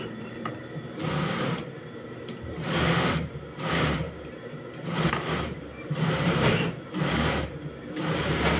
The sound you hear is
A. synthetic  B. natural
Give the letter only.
A